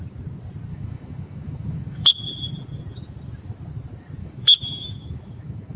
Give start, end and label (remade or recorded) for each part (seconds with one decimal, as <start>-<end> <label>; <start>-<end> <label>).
0.0-0.7 recorded; 0.7-2.1 remade; 2.1-4.2 recorded; 4.2-5.8 remade